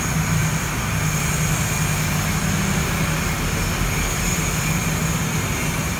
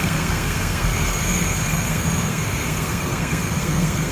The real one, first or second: first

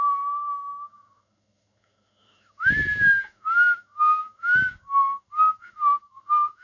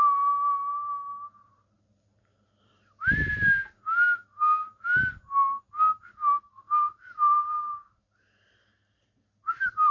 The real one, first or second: second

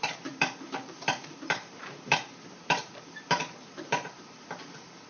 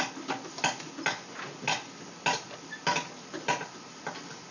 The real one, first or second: second